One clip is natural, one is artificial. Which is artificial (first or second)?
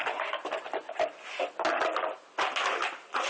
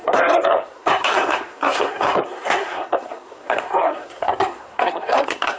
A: second